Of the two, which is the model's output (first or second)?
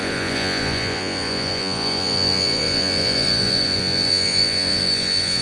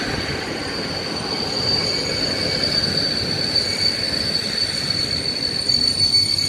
first